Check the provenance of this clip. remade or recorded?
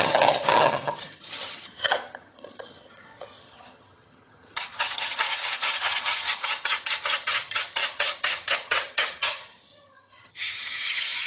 remade